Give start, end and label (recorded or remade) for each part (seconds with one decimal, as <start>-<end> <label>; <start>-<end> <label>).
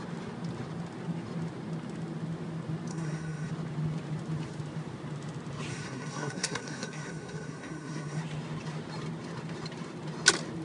0.0-2.9 recorded; 2.9-3.5 remade; 3.5-5.7 recorded; 5.7-8.2 remade; 8.2-10.6 recorded